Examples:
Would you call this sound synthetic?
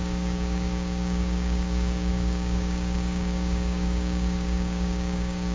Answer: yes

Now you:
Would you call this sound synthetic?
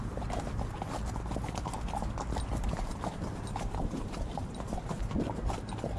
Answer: no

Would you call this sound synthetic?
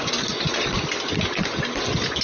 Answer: no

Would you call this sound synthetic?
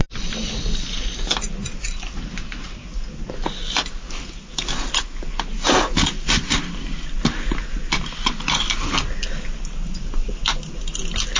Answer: no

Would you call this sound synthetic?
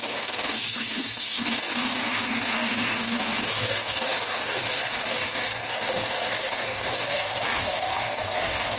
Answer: yes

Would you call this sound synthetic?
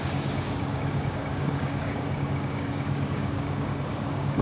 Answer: yes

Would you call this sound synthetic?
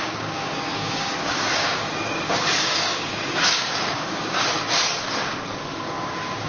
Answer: yes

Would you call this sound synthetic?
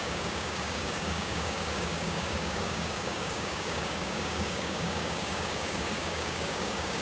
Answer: yes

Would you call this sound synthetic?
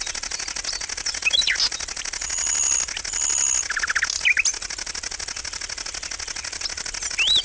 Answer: no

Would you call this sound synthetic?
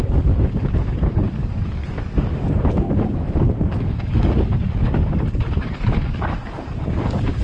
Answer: yes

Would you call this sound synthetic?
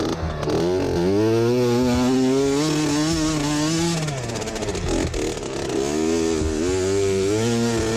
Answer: no